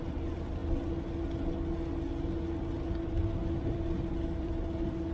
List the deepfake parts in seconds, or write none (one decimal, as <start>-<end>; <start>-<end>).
0.0-0.6; 3.7-5.1